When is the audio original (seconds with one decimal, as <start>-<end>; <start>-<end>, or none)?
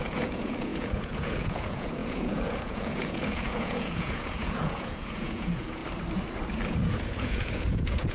5.8-6.7